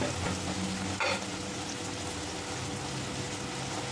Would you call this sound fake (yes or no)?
no